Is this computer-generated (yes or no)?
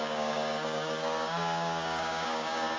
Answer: yes